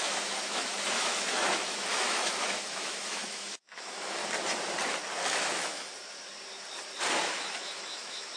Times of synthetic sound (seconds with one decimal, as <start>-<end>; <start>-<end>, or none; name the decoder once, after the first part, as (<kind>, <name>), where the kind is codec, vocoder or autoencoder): 0.0-4.2 (autoencoder, DAC-VAE); 5.3-5.9; 7.2-8.4